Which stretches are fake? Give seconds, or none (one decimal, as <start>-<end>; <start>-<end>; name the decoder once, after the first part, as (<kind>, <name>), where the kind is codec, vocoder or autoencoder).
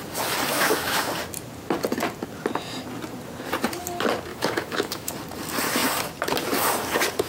0.5-1.1 (autoencoder, DAC-VAE); 4.3-5.1